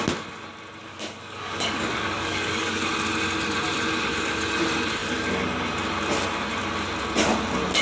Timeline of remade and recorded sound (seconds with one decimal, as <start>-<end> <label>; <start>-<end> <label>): 0.0-0.9 recorded; 0.9-2.8 remade; 2.8-7.8 recorded